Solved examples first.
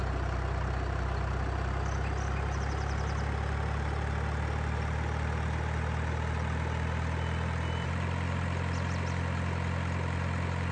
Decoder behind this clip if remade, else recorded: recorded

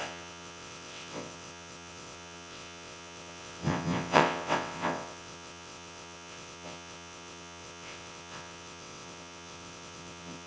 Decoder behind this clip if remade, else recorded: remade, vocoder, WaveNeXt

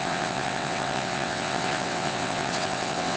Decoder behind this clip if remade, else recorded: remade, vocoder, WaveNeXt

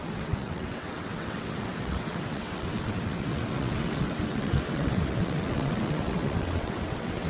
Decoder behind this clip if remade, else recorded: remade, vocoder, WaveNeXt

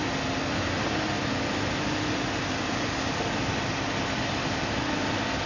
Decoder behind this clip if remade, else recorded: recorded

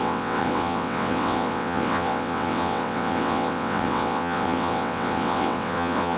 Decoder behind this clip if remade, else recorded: remade, vocoder, WaveNeXt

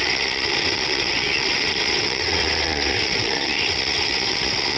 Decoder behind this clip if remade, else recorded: remade, vocoder, WaveNeXt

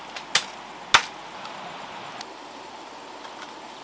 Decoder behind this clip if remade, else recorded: recorded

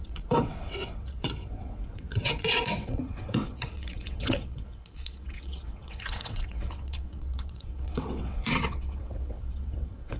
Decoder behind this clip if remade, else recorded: remade, vocoder, WaveNeXt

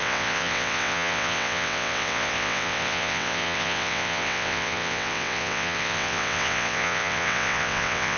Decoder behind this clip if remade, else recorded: remade, vocoder, WaveNeXt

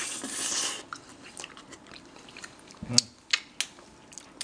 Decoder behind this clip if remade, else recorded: recorded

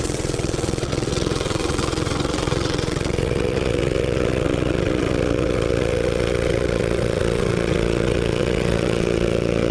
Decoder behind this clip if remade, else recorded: remade, vocoder, WaveNeXt